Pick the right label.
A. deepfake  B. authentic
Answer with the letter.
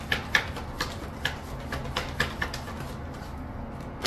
B